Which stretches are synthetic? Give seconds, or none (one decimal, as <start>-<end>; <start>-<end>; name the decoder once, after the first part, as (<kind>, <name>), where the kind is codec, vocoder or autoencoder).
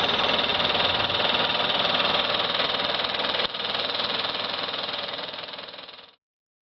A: none